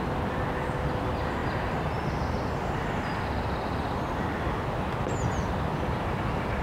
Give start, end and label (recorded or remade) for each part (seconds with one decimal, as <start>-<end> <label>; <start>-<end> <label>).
0.0-6.6 recorded